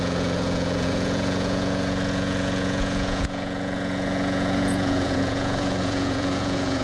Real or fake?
fake